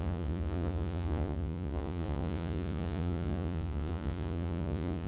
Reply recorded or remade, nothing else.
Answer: remade